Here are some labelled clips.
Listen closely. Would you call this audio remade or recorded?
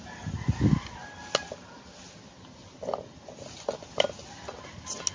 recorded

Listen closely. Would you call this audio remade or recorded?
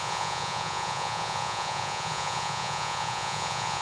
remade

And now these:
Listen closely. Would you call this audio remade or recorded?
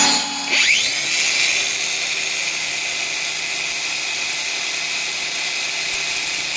recorded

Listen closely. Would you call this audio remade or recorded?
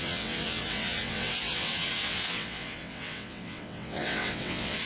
remade